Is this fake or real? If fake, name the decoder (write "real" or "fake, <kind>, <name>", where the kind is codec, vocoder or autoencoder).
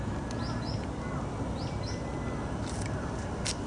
real